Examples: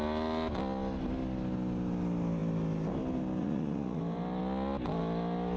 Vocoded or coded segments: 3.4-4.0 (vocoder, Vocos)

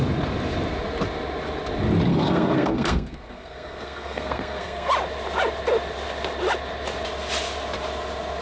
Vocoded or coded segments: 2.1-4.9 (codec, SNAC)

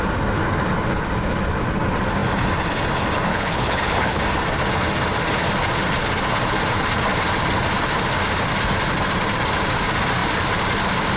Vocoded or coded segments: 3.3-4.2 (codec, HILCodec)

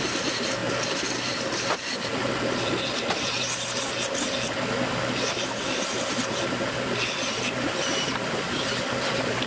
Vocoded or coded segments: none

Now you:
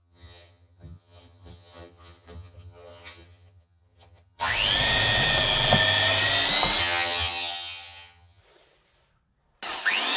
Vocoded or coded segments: 0.0-4.5 (vocoder, HiFi-GAN); 6.8-8.4

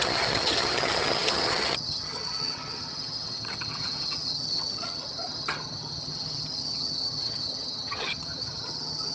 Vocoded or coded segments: 0.0-9.1 (vocoder, HiFi-GAN)

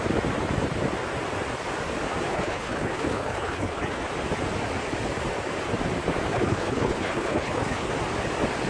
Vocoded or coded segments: 2.3-4.0 (codec, HILCodec); 6.3-7.9

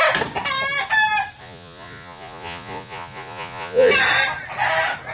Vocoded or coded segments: 1.4-3.9 (vocoder, Vocos)